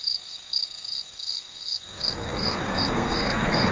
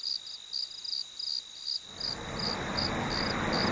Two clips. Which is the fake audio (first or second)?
first